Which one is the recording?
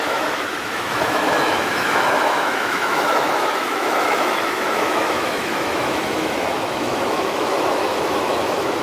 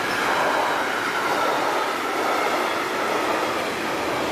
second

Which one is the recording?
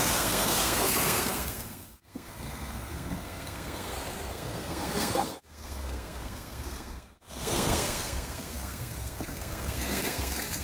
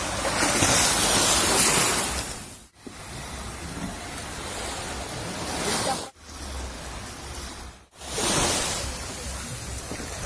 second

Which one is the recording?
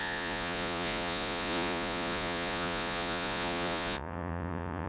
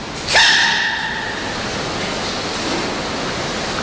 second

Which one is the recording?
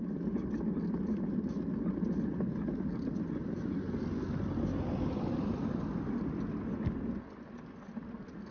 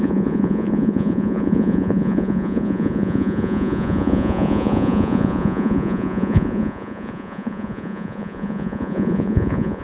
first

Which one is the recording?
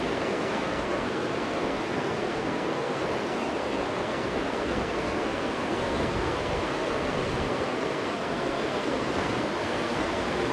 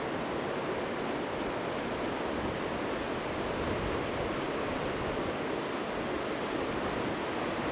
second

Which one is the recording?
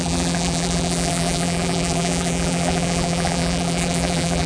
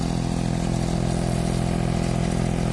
second